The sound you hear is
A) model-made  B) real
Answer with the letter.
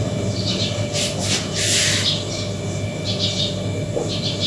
B